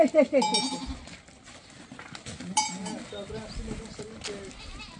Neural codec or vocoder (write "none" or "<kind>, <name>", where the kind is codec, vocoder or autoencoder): none